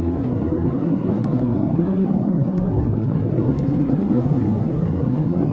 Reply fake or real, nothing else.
fake